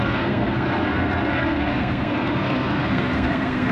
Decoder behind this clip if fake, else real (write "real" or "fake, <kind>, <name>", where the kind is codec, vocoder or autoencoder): fake, codec, SNAC